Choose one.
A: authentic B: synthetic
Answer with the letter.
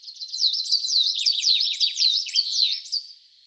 B